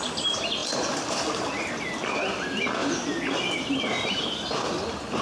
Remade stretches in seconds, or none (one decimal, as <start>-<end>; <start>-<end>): none